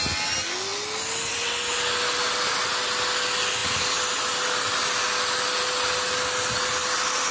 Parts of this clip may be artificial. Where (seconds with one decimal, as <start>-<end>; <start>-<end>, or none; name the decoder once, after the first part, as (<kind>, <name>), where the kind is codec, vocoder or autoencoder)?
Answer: none